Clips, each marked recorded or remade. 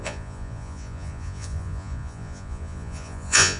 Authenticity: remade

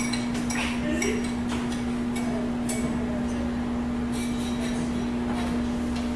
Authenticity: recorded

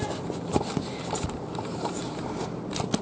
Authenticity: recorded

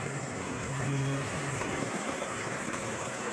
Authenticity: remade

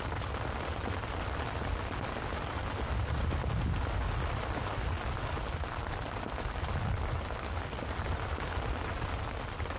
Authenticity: recorded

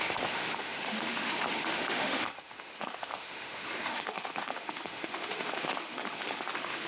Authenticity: remade